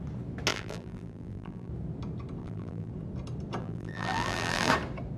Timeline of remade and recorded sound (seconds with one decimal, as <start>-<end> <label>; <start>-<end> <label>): 0.0-0.5 recorded; 0.5-1.7 remade; 1.7-2.4 recorded; 2.4-2.9 remade; 2.9-3.6 recorded; 3.6-4.7 remade; 4.7-5.2 recorded